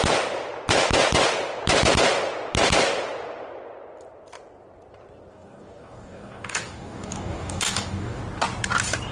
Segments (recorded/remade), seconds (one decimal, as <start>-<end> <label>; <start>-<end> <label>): 0.0-5.3 recorded; 5.3-8.2 remade; 8.2-9.1 recorded